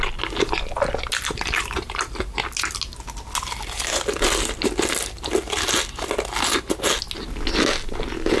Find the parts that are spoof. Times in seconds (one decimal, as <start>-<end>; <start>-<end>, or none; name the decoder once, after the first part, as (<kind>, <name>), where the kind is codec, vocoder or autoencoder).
none